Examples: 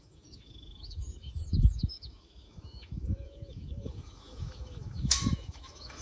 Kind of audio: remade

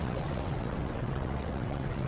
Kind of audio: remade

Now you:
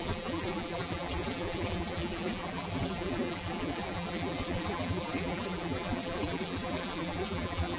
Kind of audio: remade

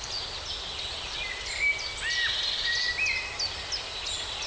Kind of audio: recorded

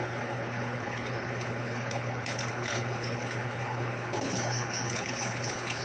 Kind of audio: remade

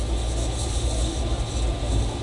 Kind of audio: recorded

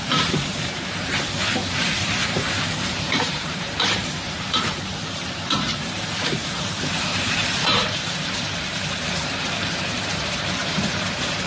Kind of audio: remade